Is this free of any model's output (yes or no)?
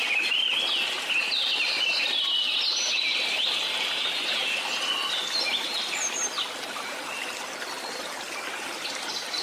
yes